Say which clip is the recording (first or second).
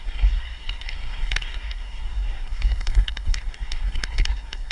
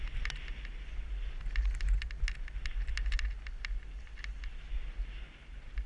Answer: second